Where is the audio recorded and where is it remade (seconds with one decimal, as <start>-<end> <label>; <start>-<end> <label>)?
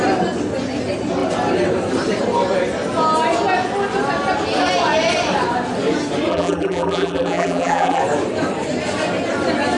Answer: 0.0-6.3 recorded; 6.3-8.0 remade; 8.0-9.8 recorded